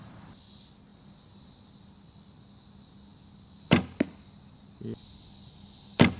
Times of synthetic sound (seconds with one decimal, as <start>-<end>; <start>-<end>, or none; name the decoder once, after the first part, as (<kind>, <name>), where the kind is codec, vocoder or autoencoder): none